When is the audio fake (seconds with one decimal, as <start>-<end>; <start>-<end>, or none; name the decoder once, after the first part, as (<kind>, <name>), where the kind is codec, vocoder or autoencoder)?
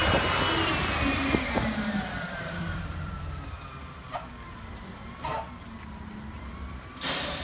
0.9-5.3 (vocoder, BigVGAN v2); 6.9-7.4